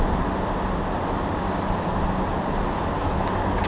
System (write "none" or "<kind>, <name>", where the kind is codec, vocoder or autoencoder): none